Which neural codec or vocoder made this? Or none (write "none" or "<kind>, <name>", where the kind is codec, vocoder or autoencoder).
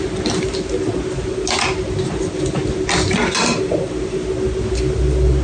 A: none